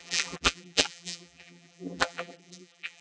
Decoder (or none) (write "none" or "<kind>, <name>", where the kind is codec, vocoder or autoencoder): vocoder, BigVGAN v2